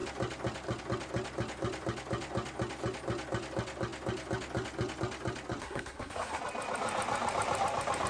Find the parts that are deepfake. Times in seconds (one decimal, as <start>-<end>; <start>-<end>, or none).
5.6-6.4